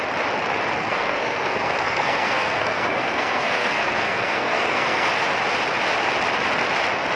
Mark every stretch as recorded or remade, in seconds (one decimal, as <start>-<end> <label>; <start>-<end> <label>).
0.0-0.8 recorded; 0.8-5.1 remade; 5.1-7.2 recorded